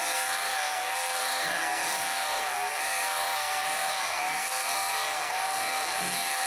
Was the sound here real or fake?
fake